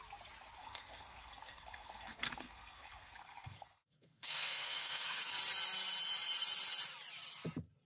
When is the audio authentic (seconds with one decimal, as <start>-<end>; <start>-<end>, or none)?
0.0-0.6; 5.3-7.9

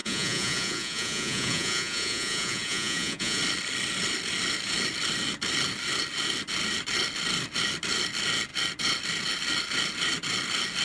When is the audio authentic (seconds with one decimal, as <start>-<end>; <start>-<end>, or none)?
3.4-10.8

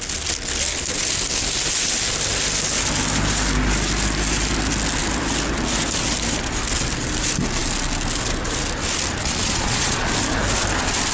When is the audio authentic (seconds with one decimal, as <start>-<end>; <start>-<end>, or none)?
0.0-9.2; 10.1-11.1

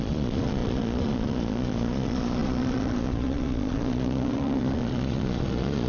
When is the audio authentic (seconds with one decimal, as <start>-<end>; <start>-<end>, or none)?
none

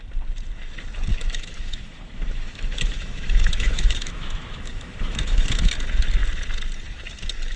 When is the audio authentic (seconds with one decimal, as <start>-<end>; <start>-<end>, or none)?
0.0-1.1; 5.7-7.6

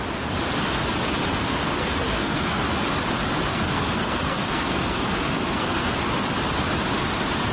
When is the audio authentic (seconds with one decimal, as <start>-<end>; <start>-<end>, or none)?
0.0-1.3; 2.6-3.5; 5.9-7.5